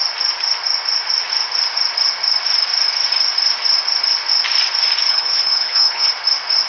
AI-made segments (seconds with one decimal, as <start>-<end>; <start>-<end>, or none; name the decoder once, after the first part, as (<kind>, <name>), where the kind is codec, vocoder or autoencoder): 5.1-6.1 (codec, HILCodec)

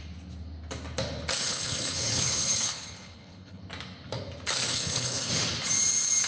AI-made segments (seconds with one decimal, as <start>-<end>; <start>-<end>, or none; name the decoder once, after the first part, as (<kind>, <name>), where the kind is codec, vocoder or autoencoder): 1.4-3.6 (codec, HILCodec); 4.7-5.3